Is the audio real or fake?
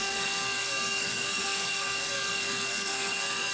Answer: fake